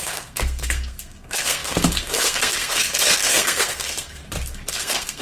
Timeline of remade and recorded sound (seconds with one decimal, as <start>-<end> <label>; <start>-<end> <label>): 0.0-4.2 remade; 4.2-4.7 recorded; 4.7-5.2 remade